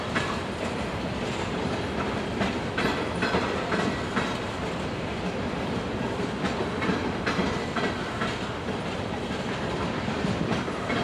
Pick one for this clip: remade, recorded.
remade